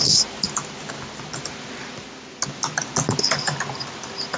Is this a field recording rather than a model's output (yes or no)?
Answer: yes